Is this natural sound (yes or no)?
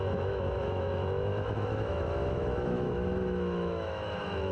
no